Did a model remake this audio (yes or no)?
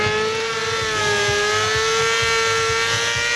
no